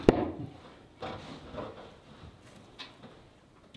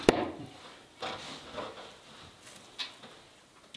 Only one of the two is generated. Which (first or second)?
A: first